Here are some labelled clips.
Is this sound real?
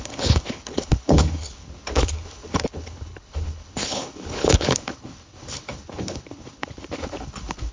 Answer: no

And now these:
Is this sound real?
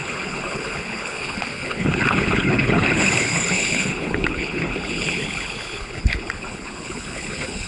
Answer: no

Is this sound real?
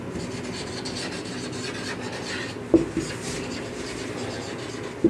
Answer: yes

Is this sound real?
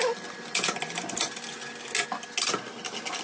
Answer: yes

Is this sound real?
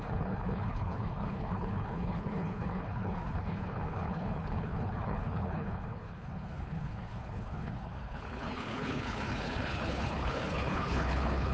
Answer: no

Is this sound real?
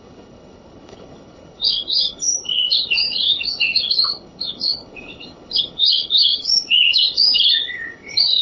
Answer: no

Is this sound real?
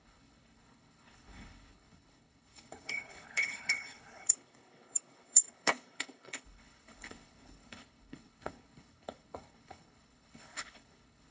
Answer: no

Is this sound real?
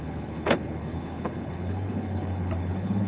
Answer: no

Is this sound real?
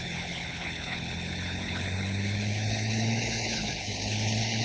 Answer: no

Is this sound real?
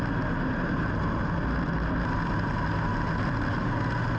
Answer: yes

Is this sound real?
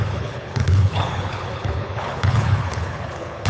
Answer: no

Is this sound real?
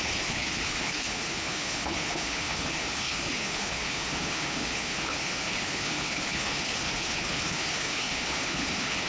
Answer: no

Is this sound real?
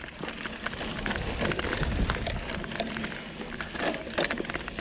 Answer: yes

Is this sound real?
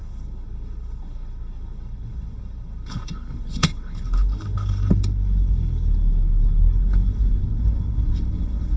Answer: no